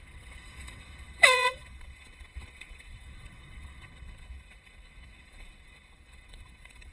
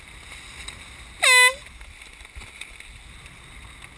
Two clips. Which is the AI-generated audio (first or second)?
first